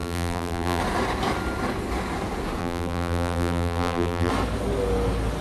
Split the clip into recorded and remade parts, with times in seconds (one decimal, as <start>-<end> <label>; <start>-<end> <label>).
0.0-0.8 remade; 0.8-2.6 recorded; 2.6-4.3 remade; 4.3-5.4 recorded